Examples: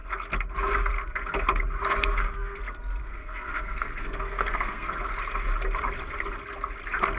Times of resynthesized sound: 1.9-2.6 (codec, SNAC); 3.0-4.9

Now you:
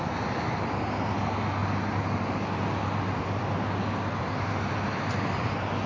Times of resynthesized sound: none

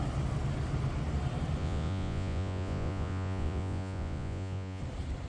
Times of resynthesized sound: 1.6-4.8 (vocoder, Vocos)